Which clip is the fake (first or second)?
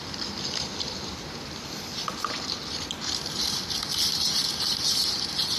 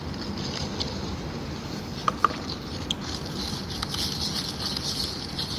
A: first